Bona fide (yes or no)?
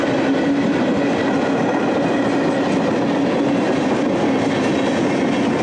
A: yes